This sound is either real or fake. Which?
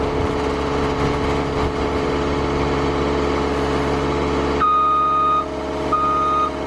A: real